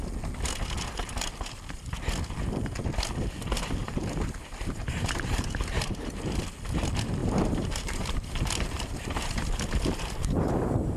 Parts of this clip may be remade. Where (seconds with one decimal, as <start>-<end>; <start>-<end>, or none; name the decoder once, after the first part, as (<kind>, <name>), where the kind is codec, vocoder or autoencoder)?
3.8-6.2 (vocoder, BigVGAN v2); 7.2-11.0